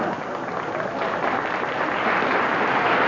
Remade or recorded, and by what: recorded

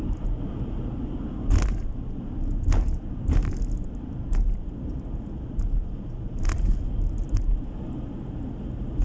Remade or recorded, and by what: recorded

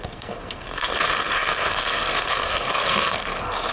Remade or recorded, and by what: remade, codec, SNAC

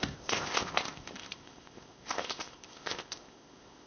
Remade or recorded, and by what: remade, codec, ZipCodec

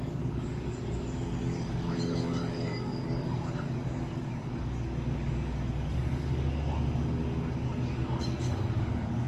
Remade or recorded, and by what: remade, codec, DAC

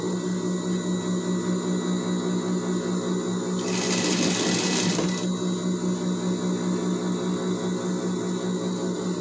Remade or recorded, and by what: recorded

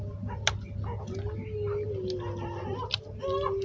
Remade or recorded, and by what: recorded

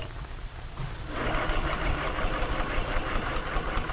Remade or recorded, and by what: recorded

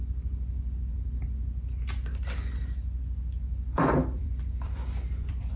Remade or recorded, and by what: remade, vocoder, BigVGAN v2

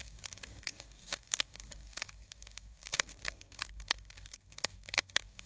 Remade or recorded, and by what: remade, codec, DAC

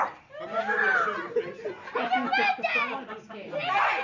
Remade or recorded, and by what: recorded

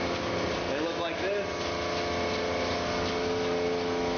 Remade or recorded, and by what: recorded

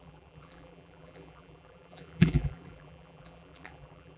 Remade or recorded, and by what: remade, vocoder, BigVGAN v2